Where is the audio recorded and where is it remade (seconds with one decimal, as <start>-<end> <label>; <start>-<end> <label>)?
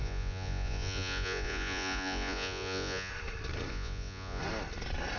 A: 0.0-3.1 remade; 3.1-3.7 recorded; 3.7-4.4 remade; 4.4-5.2 recorded